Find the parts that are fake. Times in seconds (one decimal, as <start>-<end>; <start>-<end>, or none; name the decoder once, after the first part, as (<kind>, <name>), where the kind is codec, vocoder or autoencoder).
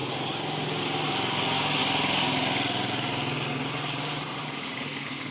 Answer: 1.1-1.8 (codec, DAC); 4.4-5.3